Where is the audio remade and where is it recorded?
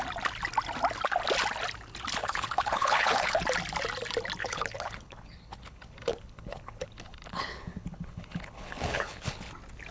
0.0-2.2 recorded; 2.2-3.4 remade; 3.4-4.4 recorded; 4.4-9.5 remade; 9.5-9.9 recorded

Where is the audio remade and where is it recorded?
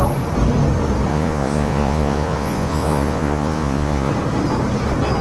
0.0-1.1 recorded; 1.1-4.1 remade; 4.1-5.2 recorded